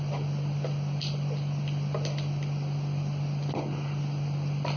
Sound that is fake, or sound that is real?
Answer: real